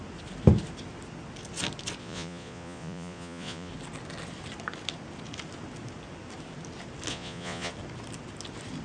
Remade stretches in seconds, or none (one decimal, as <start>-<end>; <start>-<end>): 2.0-3.7; 7.1-7.7